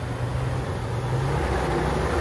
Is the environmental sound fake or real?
real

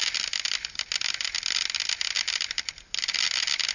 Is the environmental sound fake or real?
real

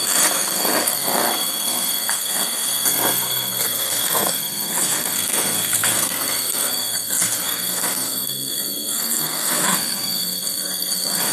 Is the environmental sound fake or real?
fake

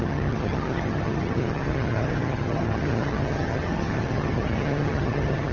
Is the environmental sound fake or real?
fake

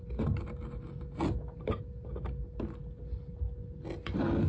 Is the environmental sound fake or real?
real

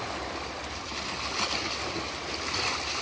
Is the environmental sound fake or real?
real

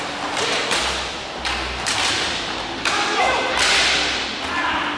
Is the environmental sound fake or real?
real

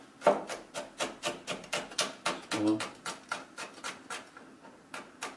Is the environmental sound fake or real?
real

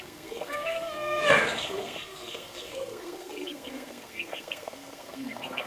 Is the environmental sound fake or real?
fake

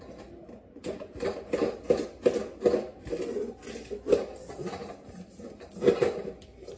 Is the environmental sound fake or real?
real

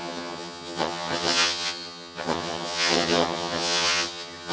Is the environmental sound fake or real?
fake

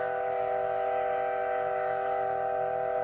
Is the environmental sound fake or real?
real